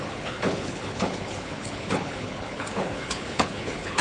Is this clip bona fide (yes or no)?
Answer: no